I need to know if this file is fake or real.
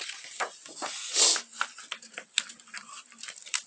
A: real